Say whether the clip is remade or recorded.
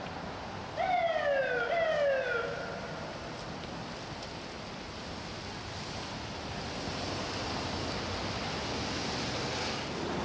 recorded